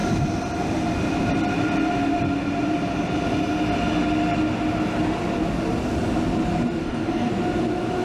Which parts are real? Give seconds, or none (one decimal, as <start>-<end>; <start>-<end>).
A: 0.0-6.8; 7.3-8.0